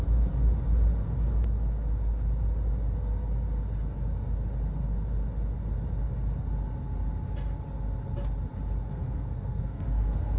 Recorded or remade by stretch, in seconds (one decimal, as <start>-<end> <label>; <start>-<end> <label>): 0.0-8.9 recorded; 8.9-10.4 remade